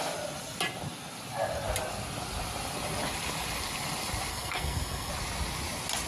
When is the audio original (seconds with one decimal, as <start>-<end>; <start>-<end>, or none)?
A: 0.0-4.3; 5.1-6.1